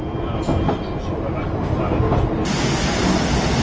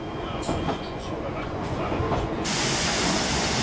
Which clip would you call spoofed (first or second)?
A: second